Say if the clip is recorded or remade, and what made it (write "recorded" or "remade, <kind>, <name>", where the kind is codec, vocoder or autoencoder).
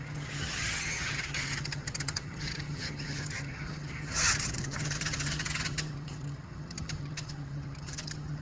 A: remade, vocoder, HiFi-GAN